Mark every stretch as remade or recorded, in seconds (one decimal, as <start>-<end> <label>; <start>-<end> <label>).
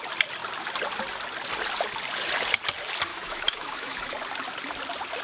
0.0-3.1 recorded; 3.1-4.1 remade; 4.1-5.2 recorded